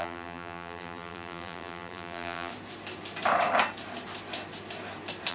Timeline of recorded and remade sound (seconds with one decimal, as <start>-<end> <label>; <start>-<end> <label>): 0.0-2.5 remade; 2.5-5.3 recorded